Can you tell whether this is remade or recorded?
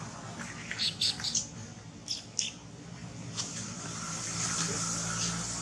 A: recorded